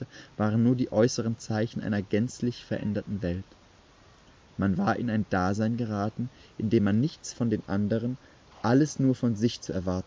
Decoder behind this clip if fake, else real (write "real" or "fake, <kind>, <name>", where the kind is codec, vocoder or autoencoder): real